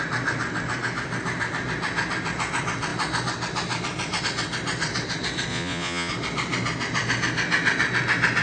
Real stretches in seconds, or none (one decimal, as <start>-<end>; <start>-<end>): 0.0-5.5; 6.1-8.4